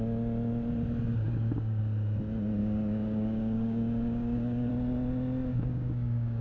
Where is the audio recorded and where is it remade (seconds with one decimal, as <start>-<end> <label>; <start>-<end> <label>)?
0.0-1.1 recorded; 1.1-1.8 remade; 1.8-2.6 recorded; 2.6-4.7 remade; 4.7-5.5 recorded; 5.5-6.4 remade